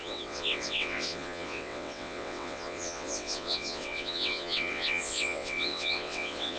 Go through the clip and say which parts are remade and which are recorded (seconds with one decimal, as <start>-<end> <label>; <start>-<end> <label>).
0.0-6.6 remade